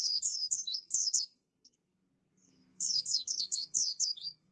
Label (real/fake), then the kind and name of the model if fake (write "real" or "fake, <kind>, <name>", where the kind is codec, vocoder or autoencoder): fake, codec, SNAC